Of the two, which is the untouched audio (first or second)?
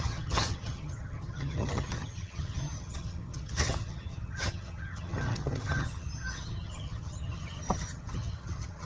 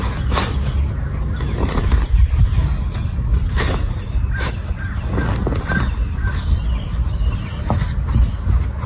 second